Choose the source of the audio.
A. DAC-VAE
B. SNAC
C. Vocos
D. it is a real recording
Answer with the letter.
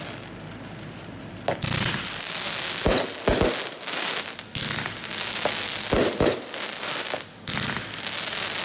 D